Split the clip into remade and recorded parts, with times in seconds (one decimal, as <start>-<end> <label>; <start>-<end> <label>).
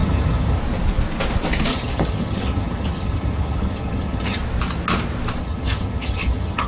0.0-0.6 remade; 0.6-1.7 recorded; 1.7-4.4 remade; 4.4-5.4 recorded; 5.4-6.7 remade